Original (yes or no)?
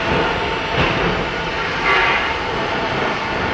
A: yes